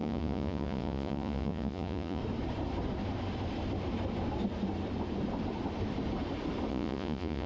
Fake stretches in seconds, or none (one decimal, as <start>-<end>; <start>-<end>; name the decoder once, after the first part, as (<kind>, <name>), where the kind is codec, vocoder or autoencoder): 0.0-2.2 (vocoder, Vocos); 6.7-7.5